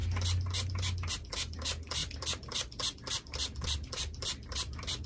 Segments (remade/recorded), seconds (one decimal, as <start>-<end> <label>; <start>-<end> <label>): 0.0-2.0 recorded; 2.0-5.1 remade